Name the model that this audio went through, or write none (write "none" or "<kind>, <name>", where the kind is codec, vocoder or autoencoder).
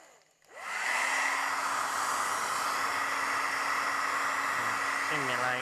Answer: none